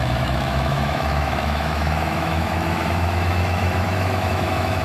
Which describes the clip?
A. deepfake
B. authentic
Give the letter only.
A